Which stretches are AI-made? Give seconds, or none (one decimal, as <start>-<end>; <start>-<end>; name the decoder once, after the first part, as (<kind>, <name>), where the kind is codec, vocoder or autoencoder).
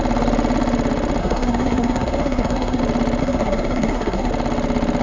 1.2-2.8 (codec, SNAC); 3.2-4.3